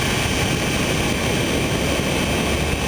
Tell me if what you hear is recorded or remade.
recorded